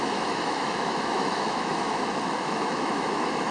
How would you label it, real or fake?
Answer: fake